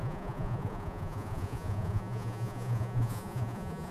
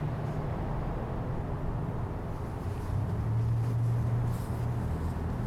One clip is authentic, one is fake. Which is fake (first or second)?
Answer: first